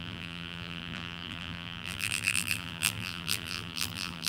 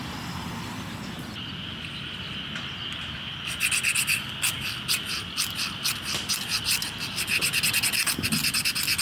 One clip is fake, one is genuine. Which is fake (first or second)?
first